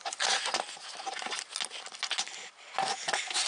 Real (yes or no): yes